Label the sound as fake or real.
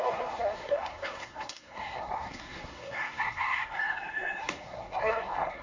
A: fake